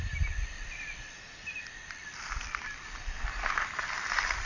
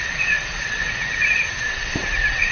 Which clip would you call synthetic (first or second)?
second